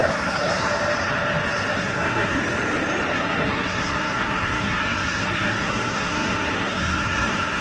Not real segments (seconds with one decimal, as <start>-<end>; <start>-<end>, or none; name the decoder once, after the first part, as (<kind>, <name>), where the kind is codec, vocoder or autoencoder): 0.0-0.7 (codec, SNAC); 1.7-2.4; 3.1-7.6